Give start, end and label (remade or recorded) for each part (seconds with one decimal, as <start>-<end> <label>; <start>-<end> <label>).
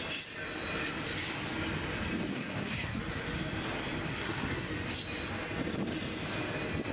0.0-2.3 recorded; 2.3-3.0 remade; 3.0-4.1 recorded; 4.1-4.7 remade; 4.7-6.9 recorded